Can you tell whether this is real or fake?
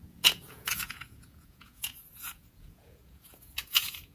fake